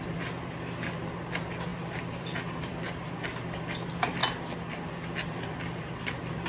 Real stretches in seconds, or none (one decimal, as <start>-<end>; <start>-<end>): 0.0-1.7; 3.2-6.5